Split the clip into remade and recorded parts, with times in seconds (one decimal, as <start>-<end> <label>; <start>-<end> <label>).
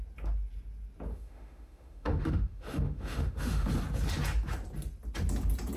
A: 0.0-1.1 recorded; 1.1-3.7 remade; 3.7-5.8 recorded